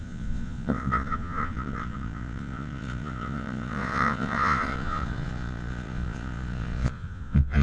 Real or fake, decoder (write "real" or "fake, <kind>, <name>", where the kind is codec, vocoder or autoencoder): fake, vocoder, Vocos